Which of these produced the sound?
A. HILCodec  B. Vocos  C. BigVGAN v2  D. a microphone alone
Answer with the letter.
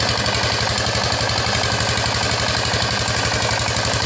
D